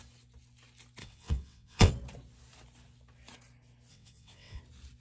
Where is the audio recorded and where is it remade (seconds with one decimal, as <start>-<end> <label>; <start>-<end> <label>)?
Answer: 0.0-1.0 recorded; 1.0-1.9 remade; 1.9-3.9 recorded; 3.9-4.6 remade; 4.6-5.0 recorded